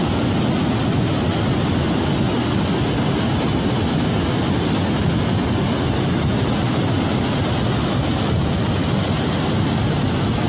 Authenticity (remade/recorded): recorded